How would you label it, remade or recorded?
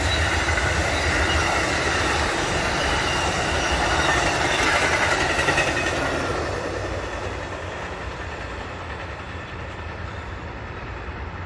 remade